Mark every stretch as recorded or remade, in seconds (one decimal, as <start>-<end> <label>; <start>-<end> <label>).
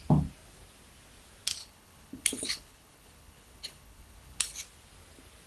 0.0-1.6 recorded; 1.6-4.5 remade; 4.5-5.5 recorded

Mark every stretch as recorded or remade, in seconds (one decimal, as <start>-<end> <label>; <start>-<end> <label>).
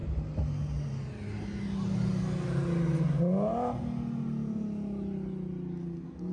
0.0-6.3 recorded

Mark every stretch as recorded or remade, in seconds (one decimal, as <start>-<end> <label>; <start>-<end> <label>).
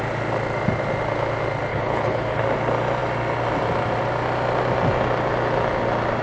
0.0-1.7 recorded; 1.7-2.4 remade; 2.4-6.2 recorded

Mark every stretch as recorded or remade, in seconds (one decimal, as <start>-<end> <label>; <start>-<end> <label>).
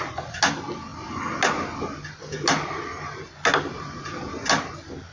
0.0-5.1 recorded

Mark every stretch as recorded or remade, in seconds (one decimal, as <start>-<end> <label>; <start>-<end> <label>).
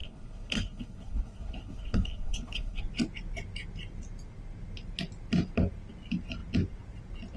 0.0-2.8 remade; 2.8-7.4 recorded